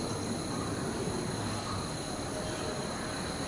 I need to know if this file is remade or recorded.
recorded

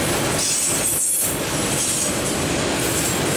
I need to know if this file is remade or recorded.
recorded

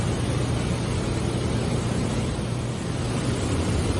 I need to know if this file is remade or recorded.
recorded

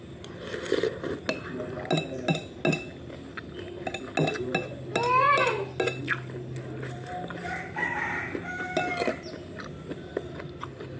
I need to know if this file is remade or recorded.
recorded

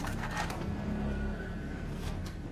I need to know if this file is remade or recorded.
remade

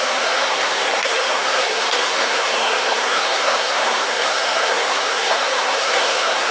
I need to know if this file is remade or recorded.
remade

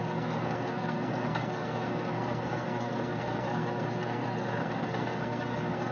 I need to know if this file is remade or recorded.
remade